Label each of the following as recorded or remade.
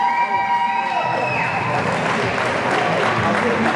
recorded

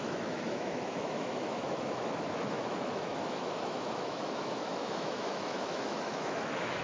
remade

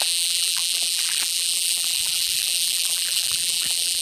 remade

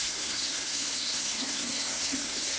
remade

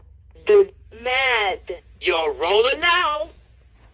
remade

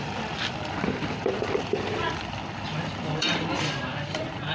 remade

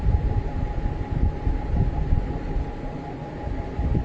recorded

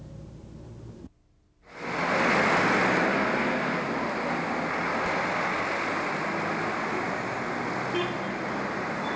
recorded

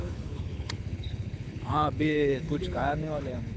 remade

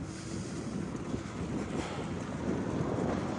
recorded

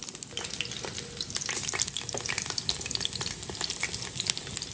recorded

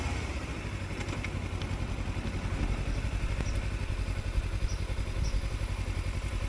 recorded